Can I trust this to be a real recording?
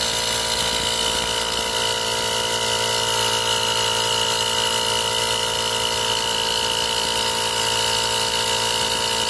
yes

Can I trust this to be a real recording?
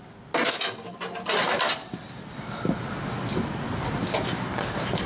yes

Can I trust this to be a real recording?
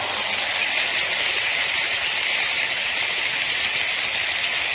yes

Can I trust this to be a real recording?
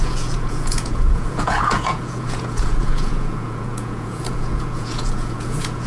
no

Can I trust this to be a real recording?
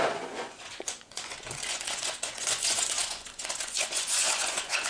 no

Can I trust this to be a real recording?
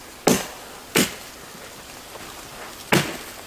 yes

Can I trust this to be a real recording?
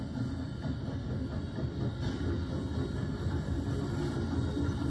yes